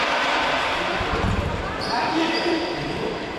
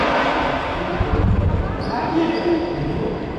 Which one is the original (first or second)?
second